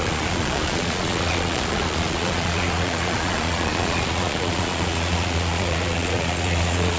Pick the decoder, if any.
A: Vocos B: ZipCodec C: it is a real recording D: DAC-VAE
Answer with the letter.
A